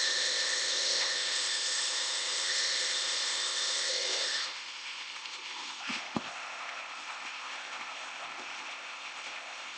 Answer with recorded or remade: remade